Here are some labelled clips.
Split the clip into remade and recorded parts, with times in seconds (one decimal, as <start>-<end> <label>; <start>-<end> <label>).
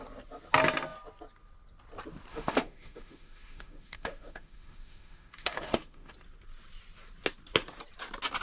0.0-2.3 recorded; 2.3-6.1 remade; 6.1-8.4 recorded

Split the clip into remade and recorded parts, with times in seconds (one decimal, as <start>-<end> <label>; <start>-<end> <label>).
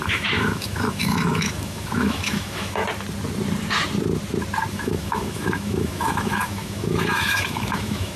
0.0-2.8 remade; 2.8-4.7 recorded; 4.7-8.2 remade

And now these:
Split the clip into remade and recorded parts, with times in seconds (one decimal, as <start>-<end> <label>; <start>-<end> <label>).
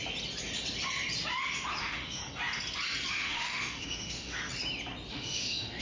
0.0-1.8 recorded; 1.8-2.2 remade; 2.2-3.1 recorded; 3.1-4.4 remade; 4.4-5.1 recorded; 5.1-5.8 remade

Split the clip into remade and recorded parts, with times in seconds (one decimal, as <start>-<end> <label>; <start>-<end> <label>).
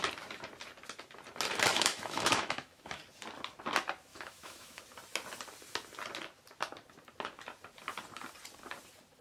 0.0-1.7 recorded; 1.7-3.0 remade; 3.0-4.1 recorded; 4.1-4.8 remade; 4.8-9.2 recorded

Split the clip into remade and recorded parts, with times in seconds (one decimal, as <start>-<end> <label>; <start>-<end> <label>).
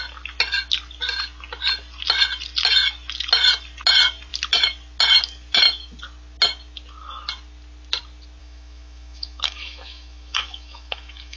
0.0-8.4 recorded; 8.4-11.4 remade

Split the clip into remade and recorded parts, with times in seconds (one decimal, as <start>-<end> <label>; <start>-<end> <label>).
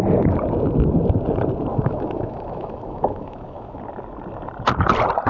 0.0-1.7 recorded; 1.7-3.8 remade; 3.8-5.3 recorded